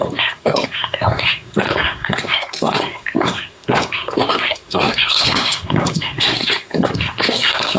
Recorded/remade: remade